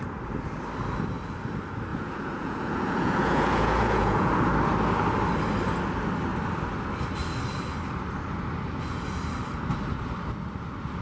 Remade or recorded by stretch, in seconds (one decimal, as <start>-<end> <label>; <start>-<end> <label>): 0.0-1.9 recorded; 1.9-4.3 remade; 4.3-11.0 recorded